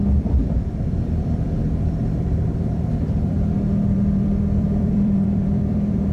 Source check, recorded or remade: remade